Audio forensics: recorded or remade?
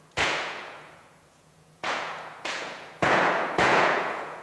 remade